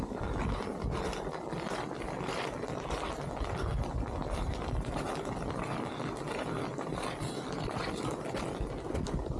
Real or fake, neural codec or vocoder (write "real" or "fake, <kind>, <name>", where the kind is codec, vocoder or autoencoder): real